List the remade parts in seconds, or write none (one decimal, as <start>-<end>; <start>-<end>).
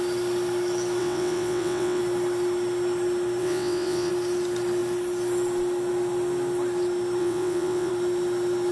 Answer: 1.0-2.0; 3.4-4.1; 7.2-7.9